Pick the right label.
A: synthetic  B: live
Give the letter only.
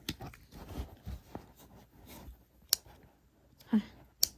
B